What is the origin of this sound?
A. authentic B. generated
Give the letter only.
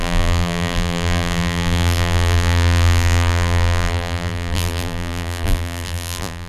B